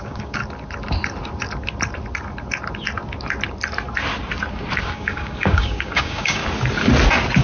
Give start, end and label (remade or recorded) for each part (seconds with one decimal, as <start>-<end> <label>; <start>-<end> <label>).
0.0-0.4 remade; 0.4-4.8 recorded; 4.8-6.4 remade; 6.4-7.4 recorded